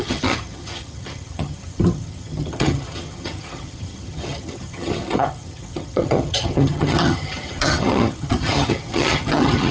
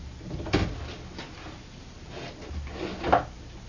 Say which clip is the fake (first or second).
first